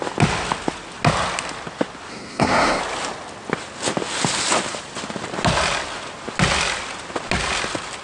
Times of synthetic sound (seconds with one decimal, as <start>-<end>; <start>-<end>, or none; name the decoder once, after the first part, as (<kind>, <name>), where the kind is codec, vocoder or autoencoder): 2.1-2.8 (codec, SNAC)